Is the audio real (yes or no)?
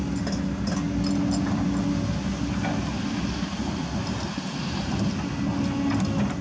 yes